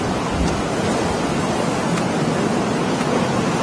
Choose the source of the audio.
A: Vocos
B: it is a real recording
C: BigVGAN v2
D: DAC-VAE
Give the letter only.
B